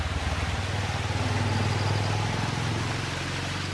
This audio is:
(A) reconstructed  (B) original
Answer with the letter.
B